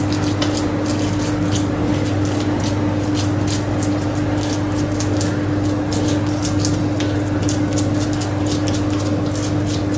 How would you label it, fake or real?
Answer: real